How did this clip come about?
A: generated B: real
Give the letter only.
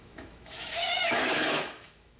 A